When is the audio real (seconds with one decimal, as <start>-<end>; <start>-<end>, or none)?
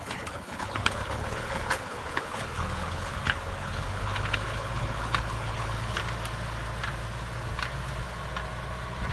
6.0-9.1